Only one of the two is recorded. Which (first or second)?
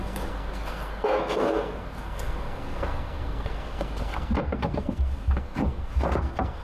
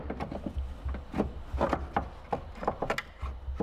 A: second